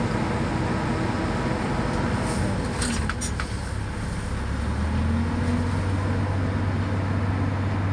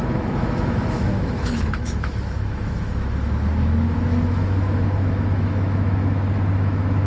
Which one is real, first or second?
first